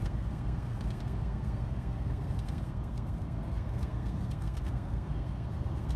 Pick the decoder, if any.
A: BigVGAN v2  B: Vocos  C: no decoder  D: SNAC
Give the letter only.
D